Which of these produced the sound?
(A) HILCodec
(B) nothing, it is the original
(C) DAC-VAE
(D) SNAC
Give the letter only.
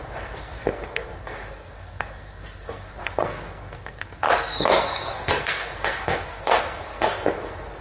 D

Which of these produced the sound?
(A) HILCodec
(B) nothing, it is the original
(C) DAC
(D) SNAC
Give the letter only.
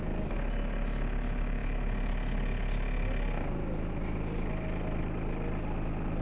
B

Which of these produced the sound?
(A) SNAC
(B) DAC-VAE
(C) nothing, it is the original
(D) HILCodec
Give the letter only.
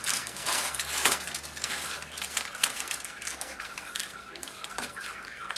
A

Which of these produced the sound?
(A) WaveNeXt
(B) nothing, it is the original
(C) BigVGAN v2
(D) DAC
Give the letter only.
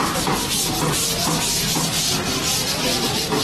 B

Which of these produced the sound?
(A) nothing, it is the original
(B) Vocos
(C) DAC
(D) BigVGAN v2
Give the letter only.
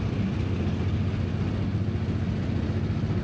A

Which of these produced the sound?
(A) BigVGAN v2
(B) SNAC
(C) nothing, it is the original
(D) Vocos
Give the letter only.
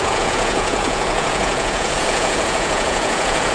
D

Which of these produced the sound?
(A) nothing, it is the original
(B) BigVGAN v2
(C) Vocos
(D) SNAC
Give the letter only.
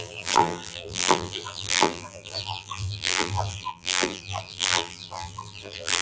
B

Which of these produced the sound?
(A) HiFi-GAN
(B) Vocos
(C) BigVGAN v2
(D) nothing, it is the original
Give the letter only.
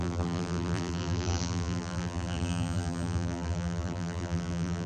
C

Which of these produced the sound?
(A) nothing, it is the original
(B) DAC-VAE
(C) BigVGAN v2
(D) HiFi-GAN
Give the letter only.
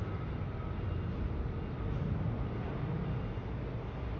A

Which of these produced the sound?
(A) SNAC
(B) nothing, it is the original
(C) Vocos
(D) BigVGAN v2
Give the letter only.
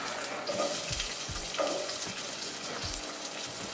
C